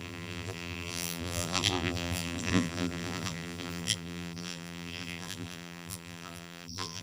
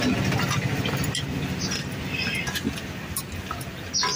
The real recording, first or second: second